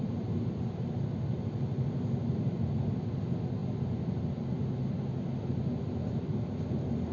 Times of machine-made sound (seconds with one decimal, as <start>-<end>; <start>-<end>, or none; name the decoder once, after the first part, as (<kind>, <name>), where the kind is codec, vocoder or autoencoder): none